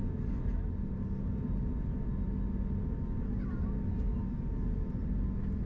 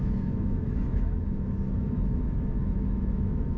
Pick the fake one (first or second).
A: second